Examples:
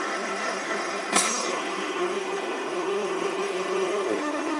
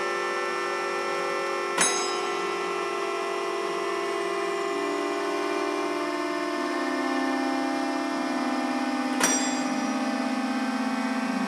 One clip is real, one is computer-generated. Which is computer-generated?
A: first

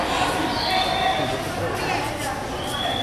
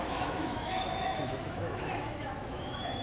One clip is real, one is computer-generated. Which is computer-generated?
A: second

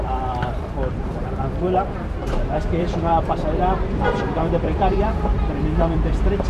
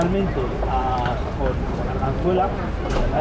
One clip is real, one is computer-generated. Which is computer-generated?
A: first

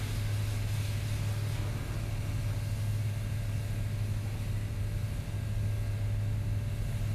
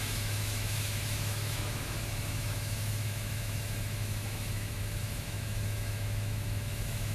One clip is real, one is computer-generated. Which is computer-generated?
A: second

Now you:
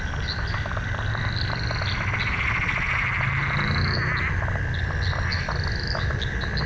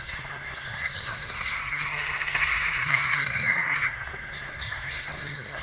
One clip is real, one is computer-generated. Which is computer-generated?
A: second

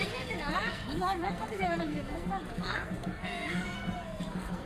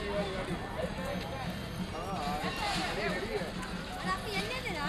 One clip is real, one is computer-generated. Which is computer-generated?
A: first